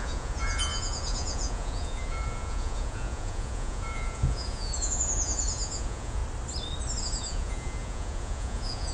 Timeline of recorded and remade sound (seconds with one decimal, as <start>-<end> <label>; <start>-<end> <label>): 0.0-6.2 remade; 6.2-7.0 recorded; 7.0-8.9 remade